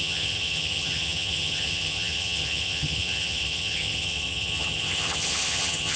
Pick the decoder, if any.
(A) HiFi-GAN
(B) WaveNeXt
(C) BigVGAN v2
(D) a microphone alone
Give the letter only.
A